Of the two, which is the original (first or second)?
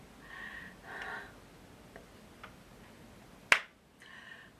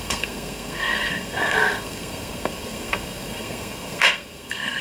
first